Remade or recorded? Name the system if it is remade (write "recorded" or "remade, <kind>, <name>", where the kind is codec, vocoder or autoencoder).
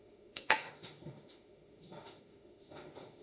remade, autoencoder, DAC-VAE